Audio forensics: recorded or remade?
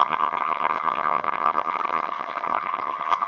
remade